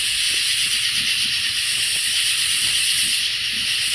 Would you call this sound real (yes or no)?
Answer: no